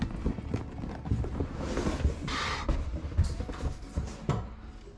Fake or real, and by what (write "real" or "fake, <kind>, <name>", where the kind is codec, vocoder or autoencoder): real